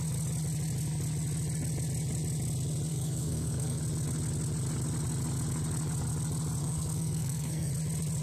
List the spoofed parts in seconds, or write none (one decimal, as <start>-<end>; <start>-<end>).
2.9-3.8; 6.6-7.7